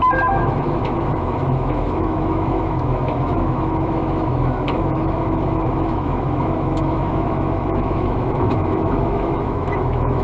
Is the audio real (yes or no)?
no